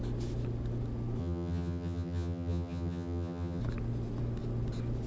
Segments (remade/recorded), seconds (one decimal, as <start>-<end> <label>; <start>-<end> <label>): 0.0-1.2 recorded; 1.2-3.6 remade; 3.6-5.1 recorded